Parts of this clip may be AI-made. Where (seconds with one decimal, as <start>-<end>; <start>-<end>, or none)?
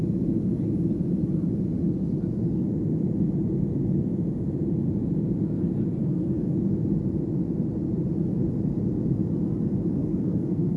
6.0-6.6; 10.0-10.8